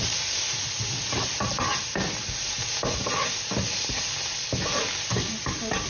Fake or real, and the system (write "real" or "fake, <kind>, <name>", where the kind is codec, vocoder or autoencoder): real